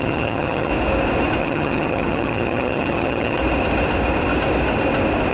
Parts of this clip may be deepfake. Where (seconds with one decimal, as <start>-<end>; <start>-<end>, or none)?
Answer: 0.0-0.7; 1.4-3.4

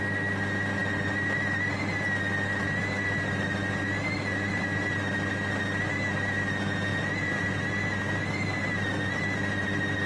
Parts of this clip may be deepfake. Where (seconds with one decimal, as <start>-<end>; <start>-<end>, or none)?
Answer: 6.9-7.6

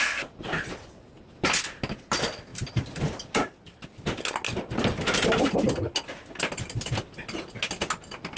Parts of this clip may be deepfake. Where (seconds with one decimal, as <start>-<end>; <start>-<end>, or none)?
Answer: none

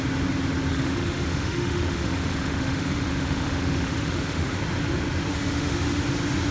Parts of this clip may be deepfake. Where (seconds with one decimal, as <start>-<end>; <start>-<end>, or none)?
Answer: 0.7-4.6; 5.3-6.0

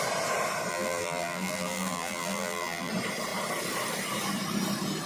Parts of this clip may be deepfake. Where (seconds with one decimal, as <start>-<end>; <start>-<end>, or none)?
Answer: 0.7-2.9

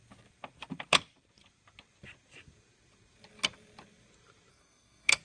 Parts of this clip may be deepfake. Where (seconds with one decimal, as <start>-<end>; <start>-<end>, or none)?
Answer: 4.5-5.2